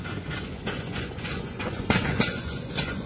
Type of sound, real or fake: fake